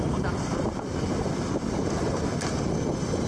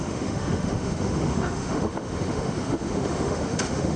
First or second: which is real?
first